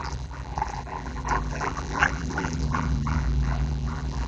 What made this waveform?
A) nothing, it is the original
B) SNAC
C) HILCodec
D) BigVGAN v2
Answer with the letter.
D